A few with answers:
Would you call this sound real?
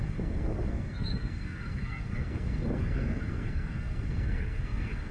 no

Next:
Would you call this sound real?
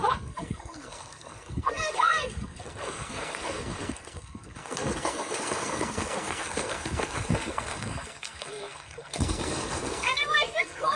no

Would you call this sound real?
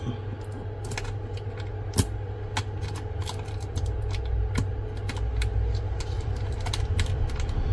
yes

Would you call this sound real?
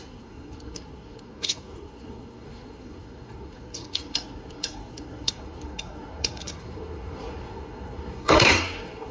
no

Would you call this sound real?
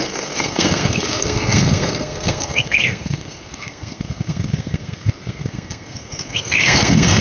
no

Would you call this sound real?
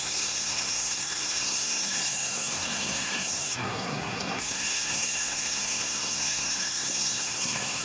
no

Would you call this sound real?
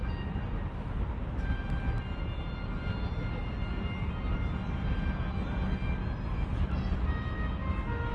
yes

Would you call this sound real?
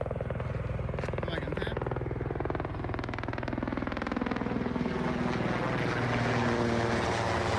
yes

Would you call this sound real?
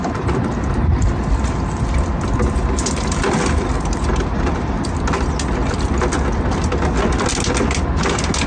yes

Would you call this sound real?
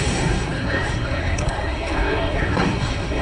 no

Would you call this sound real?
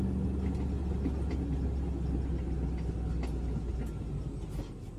yes